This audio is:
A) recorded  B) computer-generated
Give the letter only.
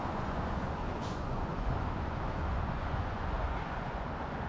B